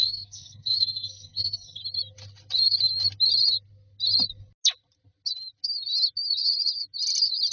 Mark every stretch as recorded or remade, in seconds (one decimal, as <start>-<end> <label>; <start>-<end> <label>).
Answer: 0.0-1.8 remade; 1.8-7.5 recorded